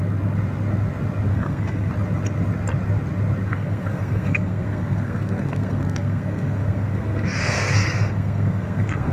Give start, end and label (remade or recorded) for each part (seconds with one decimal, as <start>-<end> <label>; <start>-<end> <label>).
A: 0.0-1.3 recorded; 1.3-1.9 remade; 1.9-3.5 recorded; 3.5-9.1 remade